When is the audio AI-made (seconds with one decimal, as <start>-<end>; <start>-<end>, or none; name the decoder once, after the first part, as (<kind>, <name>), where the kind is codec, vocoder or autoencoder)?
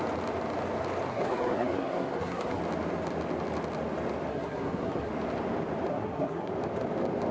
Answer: 1.1-2.6 (codec, SNAC); 4.3-5.1; 5.9-6.5